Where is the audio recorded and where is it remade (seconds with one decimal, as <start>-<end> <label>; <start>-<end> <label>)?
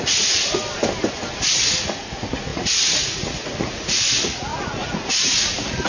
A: 0.0-0.6 remade; 0.6-1.3 recorded; 1.3-5.9 remade